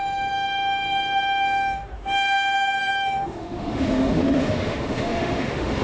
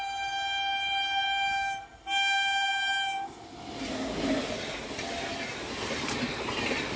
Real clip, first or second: second